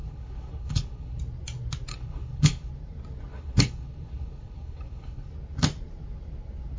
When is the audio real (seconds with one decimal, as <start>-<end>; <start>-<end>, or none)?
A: 1.2-1.9; 2.7-3.3; 5.3-6.8